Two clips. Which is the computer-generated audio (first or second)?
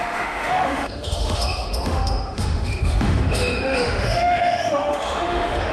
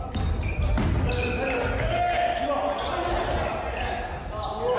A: first